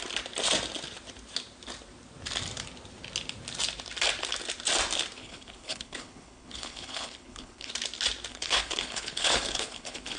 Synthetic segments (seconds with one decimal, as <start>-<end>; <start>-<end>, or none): 5.2-7.7; 8.3-10.2